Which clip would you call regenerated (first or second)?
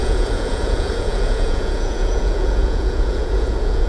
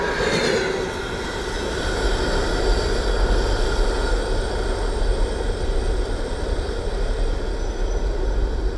first